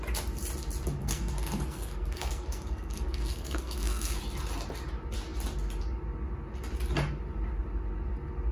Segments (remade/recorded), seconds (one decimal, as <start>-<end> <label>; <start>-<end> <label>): 0.0-1.0 recorded; 1.0-4.2 remade; 4.2-8.5 recorded